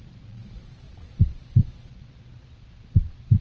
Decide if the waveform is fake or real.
fake